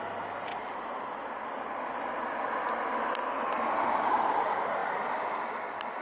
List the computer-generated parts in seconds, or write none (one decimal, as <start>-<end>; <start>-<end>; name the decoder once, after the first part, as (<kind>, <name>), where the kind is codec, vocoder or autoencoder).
none